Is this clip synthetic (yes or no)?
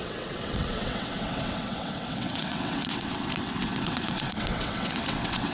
yes